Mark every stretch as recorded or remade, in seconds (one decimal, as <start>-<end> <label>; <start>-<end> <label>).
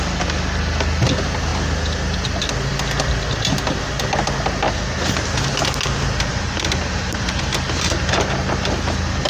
0.0-6.3 recorded; 6.3-8.0 remade; 8.0-9.3 recorded